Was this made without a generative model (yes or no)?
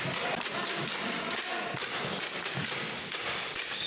yes